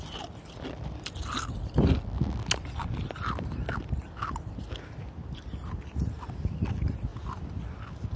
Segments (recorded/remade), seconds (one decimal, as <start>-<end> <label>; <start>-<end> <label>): 0.0-8.2 recorded